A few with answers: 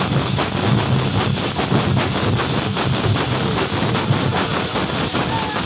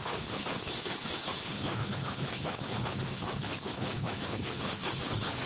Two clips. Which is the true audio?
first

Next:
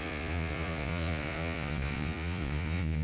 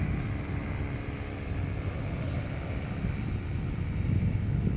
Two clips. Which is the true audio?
second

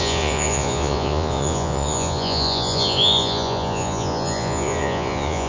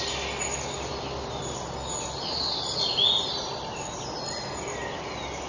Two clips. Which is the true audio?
second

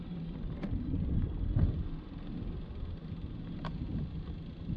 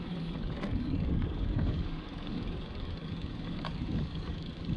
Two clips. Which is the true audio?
first